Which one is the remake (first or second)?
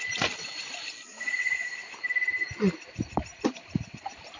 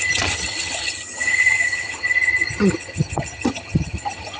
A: second